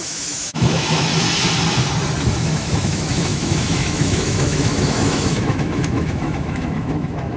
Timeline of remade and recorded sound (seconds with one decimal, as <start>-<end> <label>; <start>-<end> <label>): 0.0-1.1 remade; 1.1-2.3 recorded; 2.3-7.4 remade